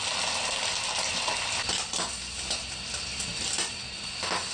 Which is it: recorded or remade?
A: recorded